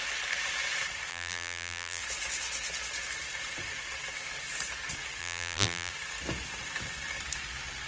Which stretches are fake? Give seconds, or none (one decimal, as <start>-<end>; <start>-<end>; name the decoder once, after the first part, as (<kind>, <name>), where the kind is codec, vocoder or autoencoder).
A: 1.1-2.0 (vocoder, BigVGAN v2); 5.2-5.9